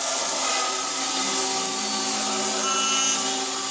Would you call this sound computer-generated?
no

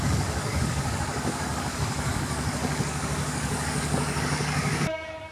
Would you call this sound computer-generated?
yes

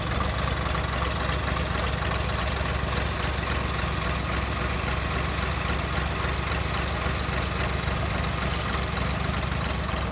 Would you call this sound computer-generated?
no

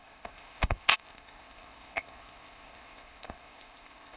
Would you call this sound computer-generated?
yes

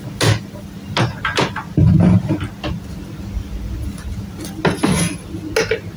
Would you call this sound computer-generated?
no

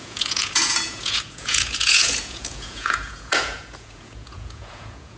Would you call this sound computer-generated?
yes